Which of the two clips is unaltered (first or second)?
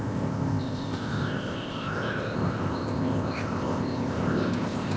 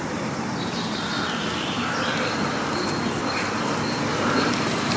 second